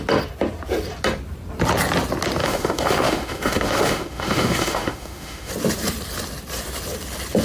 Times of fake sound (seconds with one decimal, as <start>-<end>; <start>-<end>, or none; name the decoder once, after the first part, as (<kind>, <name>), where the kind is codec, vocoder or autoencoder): 2.4-5.5 (autoencoder, DAC-VAE)